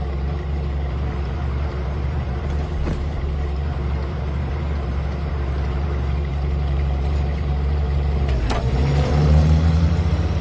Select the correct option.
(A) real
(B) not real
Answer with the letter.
B